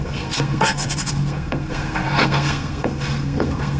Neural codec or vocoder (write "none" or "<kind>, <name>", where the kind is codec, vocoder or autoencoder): codec, SNAC